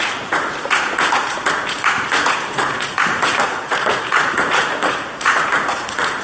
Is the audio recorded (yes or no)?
no